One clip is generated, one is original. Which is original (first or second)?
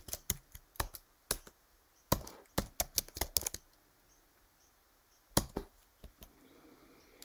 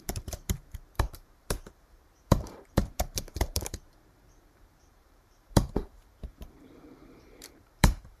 first